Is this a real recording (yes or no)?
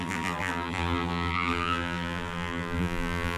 no